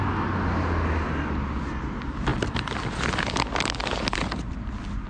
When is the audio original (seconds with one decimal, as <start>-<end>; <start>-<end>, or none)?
0.0-5.1